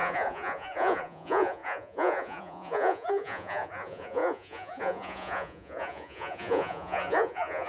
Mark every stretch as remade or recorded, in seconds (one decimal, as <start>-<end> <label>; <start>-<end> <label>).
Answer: 0.0-7.7 remade

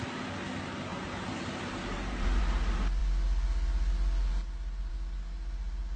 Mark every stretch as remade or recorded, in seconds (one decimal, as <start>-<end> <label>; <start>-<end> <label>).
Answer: 0.0-0.9 recorded; 0.9-2.4 remade; 2.4-6.0 recorded